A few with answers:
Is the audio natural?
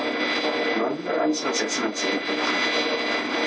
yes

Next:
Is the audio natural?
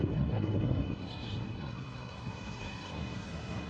no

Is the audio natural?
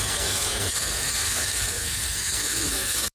no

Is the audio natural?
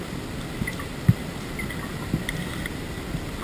yes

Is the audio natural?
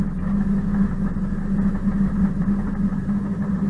yes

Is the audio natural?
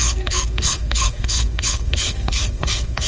no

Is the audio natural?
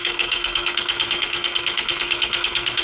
no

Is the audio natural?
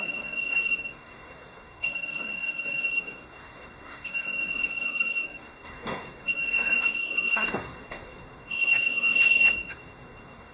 no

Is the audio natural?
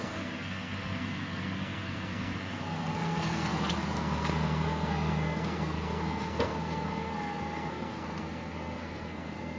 no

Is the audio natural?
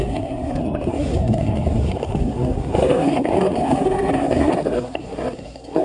no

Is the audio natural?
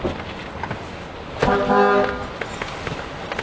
yes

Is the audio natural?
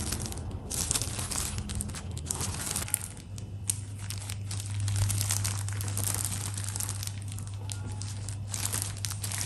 yes